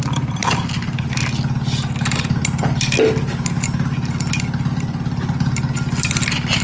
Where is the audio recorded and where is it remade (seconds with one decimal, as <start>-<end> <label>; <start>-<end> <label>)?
0.0-6.6 recorded